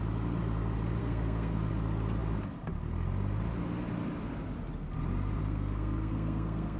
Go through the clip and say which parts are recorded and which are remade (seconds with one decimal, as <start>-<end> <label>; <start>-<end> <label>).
0.0-1.0 recorded; 1.0-1.7 remade; 1.7-5.4 recorded; 5.4-6.8 remade